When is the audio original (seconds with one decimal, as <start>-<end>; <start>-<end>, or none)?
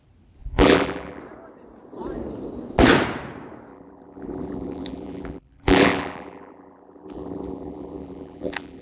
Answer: 0.0-0.4; 1.2-3.7